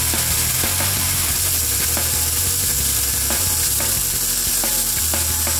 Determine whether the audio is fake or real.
real